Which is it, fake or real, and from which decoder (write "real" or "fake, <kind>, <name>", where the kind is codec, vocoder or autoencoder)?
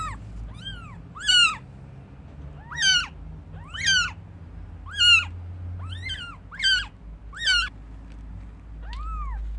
real